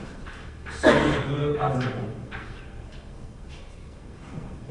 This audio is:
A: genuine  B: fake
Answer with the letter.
B